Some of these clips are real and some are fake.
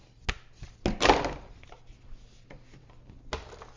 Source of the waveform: real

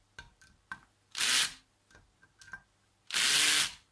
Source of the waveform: real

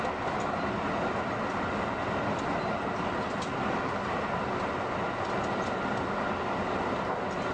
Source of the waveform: real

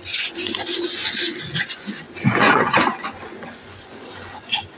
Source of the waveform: fake